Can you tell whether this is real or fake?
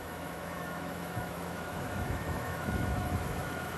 fake